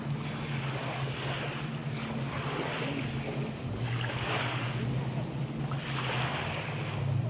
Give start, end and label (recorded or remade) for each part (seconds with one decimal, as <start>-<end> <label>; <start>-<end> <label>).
0.0-7.3 recorded